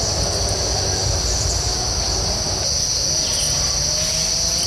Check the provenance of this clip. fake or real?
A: real